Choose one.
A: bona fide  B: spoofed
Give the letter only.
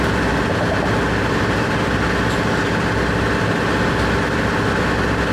A